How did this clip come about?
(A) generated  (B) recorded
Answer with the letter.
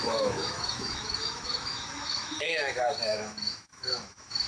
A